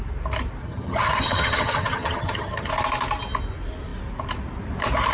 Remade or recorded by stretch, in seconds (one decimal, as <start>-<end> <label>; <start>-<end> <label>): 0.0-0.6 recorded; 0.6-2.7 remade; 2.7-5.1 recorded